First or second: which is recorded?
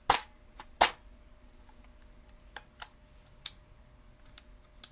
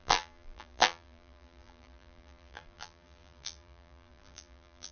first